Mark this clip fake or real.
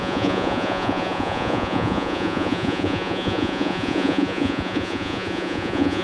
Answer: fake